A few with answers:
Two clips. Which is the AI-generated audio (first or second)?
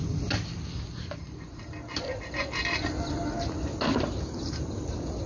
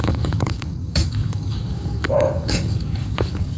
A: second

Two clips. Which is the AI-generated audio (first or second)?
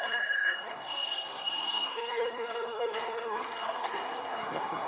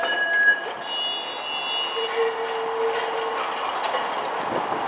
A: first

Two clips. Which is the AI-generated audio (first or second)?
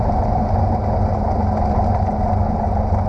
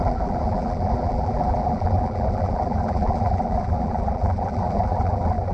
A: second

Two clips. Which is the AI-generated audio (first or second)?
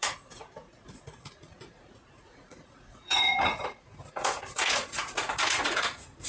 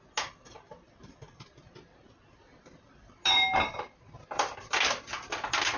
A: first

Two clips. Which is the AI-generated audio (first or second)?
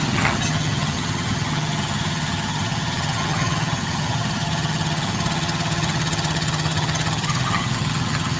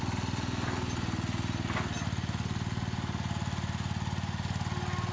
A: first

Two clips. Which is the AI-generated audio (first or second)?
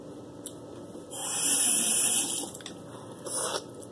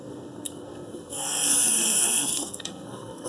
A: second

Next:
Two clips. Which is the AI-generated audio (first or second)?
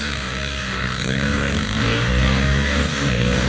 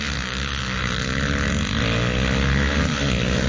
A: first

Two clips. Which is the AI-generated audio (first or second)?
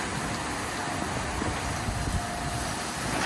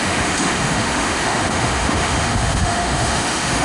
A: second